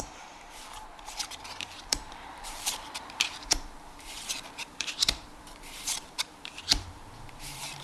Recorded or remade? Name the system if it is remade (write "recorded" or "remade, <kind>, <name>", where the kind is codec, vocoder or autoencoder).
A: remade, vocoder, BigVGAN v2